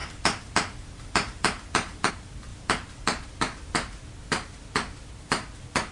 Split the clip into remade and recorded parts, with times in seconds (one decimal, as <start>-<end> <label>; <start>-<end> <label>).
0.0-2.1 remade; 2.1-2.5 recorded; 2.5-4.1 remade; 4.1-5.9 recorded